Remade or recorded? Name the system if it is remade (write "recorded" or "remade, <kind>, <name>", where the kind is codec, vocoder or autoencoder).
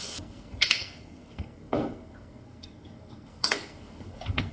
remade, codec, SNAC